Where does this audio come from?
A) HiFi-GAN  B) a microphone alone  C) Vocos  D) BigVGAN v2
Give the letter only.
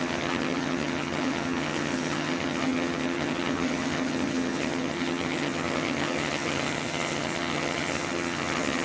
A